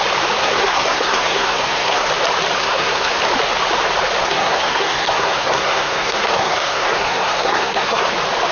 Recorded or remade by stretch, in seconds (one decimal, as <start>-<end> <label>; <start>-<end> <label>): 0.0-0.4 recorded; 0.4-2.1 remade; 2.1-2.6 recorded; 2.6-3.2 remade; 3.2-4.2 recorded; 4.2-8.1 remade; 8.1-8.5 recorded